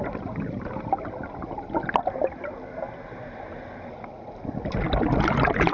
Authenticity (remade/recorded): recorded